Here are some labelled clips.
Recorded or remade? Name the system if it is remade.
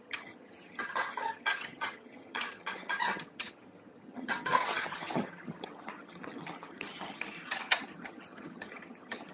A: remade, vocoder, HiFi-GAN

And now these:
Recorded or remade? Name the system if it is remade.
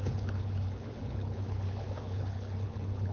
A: remade, codec, HILCodec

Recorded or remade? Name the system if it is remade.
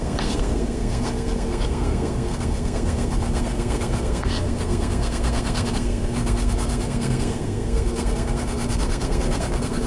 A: remade, codec, SNAC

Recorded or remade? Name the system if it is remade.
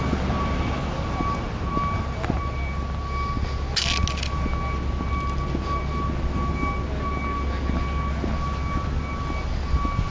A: recorded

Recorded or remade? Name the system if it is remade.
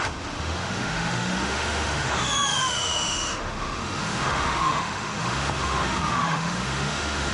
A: remade, autoencoder, DAC-VAE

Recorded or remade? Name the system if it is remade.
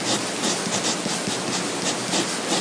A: recorded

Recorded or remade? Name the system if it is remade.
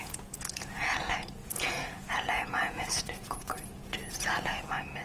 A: remade, vocoder, Vocos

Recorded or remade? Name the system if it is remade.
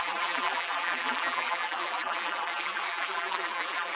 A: remade, vocoder, BigVGAN v2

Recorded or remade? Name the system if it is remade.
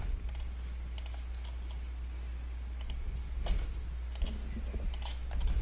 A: recorded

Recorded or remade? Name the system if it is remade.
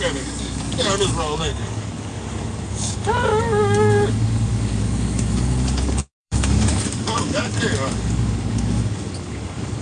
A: remade, codec, DAC